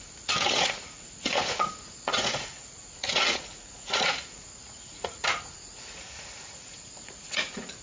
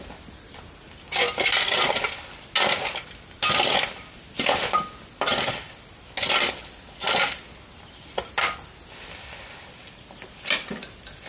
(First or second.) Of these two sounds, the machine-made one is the first